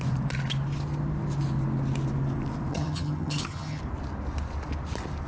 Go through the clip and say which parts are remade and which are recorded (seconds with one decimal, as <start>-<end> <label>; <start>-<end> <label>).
0.0-2.7 recorded; 2.7-3.8 remade; 3.8-5.3 recorded